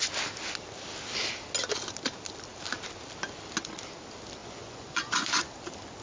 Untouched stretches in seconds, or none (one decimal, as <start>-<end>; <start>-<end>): 0.0-4.4; 5.5-6.0